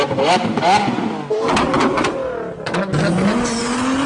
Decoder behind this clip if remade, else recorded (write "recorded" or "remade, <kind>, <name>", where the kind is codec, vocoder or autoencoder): recorded